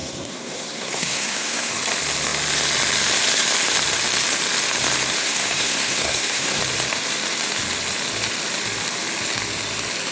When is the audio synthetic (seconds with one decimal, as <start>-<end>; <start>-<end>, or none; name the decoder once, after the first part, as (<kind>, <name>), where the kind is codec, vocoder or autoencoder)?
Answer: 0.0-1.7 (codec, SNAC); 5.2-6.6